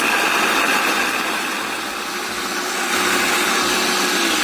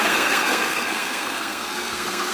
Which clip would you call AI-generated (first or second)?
second